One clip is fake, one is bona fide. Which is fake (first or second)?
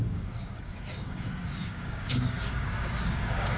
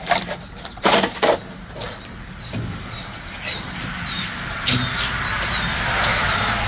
first